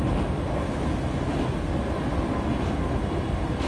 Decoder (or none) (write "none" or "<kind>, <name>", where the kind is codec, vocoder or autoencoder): none